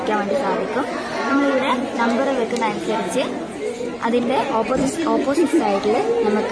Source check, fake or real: real